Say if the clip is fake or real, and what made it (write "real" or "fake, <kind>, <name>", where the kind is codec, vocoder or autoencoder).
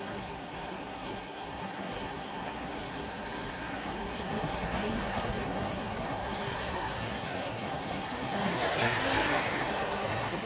fake, codec, SNAC